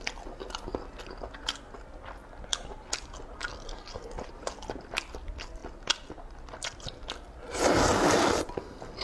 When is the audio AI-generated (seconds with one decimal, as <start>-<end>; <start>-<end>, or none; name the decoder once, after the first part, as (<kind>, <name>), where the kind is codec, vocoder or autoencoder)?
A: none